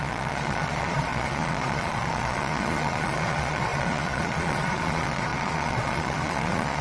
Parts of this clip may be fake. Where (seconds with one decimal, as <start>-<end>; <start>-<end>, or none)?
0.0-6.8